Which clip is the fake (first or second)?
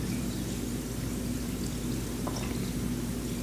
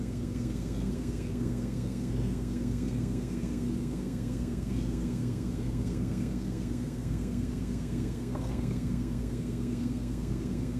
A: second